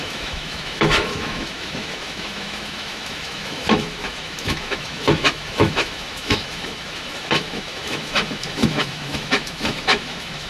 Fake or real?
fake